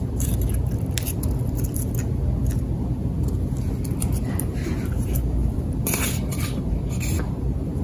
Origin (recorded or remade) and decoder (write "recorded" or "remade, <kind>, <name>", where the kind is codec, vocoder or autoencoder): remade, vocoder, BigVGAN v2